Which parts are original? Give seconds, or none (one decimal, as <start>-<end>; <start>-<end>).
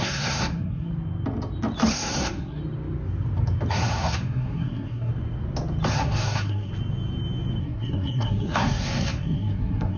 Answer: 0.9-1.9; 2.6-3.7; 5.1-5.9; 6.7-7.6